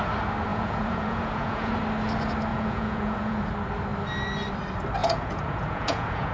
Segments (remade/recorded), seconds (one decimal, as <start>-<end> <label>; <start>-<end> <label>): 0.0-0.5 recorded; 0.5-1.7 remade; 1.7-2.5 recorded; 2.5-3.5 remade; 3.5-5.0 recorded; 5.0-6.3 remade